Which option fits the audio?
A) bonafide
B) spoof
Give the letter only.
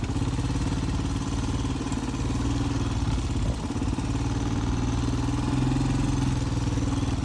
A